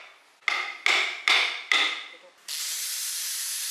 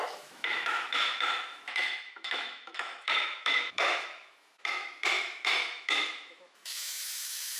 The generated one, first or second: second